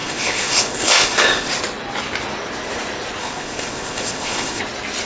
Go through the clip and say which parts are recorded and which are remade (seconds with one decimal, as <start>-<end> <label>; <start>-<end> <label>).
0.0-1.5 remade; 1.5-3.2 recorded; 3.2-4.6 remade; 4.6-5.1 recorded